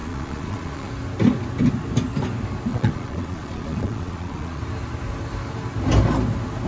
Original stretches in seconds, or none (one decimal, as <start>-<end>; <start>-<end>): 0.9-2.7; 4.6-6.7